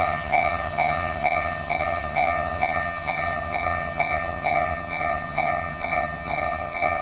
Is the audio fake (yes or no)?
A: yes